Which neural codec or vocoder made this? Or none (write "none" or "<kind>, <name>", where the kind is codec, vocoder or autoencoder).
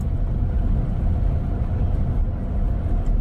none